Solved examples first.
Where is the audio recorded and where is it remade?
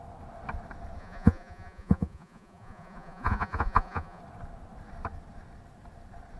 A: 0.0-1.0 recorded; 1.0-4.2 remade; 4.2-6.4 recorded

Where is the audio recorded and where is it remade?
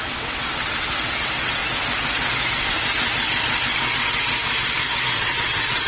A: 0.0-1.6 remade; 1.6-5.1 recorded; 5.1-5.9 remade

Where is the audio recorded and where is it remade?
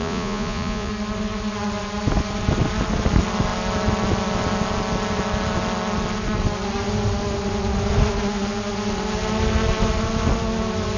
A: 0.0-0.9 remade; 0.9-11.0 recorded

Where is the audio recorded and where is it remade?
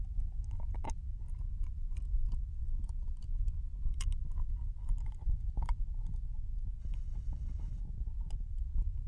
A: 0.0-6.8 recorded; 6.8-7.8 remade; 7.8-9.1 recorded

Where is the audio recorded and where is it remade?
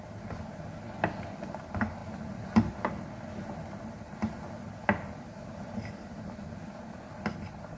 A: 0.0-7.8 recorded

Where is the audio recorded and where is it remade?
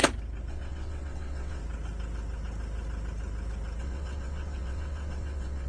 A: 0.0-0.5 recorded; 0.5-1.6 remade; 1.6-3.8 recorded; 3.8-5.7 remade